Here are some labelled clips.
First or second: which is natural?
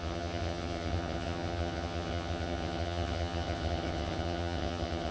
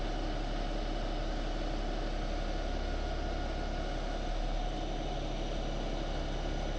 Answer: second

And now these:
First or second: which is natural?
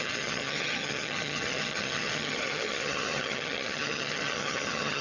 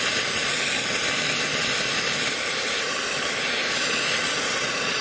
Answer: second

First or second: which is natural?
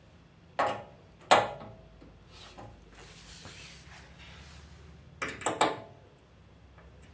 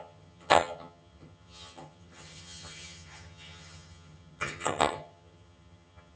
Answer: first